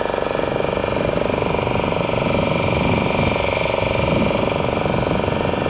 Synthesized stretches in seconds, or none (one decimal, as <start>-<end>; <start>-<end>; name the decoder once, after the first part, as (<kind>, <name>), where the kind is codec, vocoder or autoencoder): none